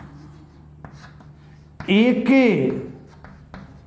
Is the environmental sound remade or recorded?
recorded